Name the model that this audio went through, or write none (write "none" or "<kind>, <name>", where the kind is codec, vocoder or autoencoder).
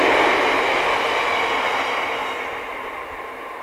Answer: none